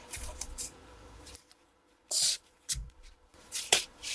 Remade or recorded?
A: remade